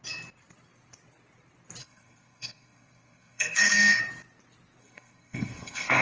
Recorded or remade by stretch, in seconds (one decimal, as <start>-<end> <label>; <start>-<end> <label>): 0.0-1.8 recorded; 1.8-4.0 remade; 4.0-4.8 recorded; 4.8-6.0 remade